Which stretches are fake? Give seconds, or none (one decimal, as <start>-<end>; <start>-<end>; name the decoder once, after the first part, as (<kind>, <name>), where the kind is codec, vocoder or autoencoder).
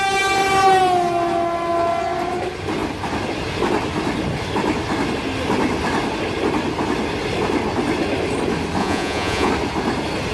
8.8-9.5 (vocoder, Vocos)